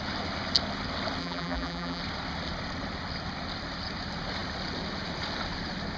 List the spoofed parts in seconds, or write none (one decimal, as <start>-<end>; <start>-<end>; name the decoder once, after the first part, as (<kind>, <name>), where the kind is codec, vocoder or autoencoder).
1.2-2.0 (vocoder, BigVGAN v2)